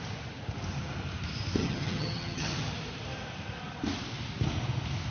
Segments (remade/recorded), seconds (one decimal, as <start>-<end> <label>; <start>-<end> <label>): 0.0-1.6 recorded; 1.6-2.7 remade; 2.7-5.1 recorded